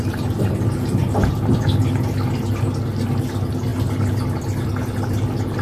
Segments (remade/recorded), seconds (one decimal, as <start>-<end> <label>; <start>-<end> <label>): 0.0-5.6 recorded